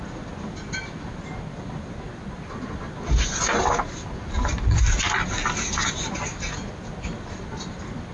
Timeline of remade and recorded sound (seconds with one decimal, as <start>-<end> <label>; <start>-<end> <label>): 0.0-8.1 recorded